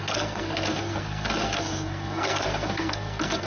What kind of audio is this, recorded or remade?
remade